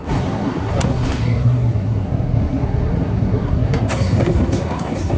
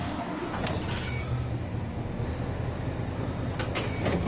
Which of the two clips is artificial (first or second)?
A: first